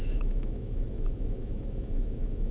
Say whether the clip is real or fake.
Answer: fake